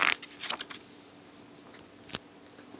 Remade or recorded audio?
recorded